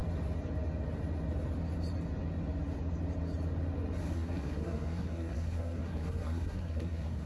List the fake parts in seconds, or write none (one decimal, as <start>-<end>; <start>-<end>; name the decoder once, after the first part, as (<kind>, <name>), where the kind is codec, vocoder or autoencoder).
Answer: 4.0-7.3 (codec, SNAC)